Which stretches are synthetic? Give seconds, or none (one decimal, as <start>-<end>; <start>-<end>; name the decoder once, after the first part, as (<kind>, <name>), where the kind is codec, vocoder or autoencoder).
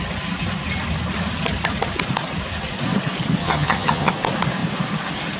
3.4-4.1 (vocoder, HiFi-GAN)